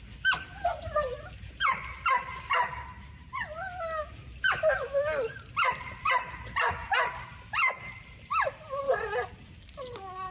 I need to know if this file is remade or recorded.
recorded